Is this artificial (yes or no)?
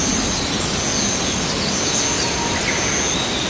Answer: no